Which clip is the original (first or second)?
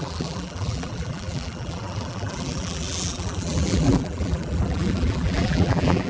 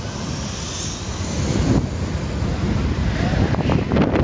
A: second